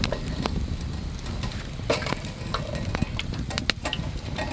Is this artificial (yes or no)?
no